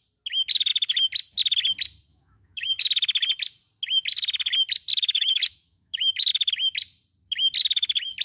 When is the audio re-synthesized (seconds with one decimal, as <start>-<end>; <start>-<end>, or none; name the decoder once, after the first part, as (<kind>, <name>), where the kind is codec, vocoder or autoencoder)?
2.1-2.8 (autoencoder, DAC-VAE); 4.9-6.3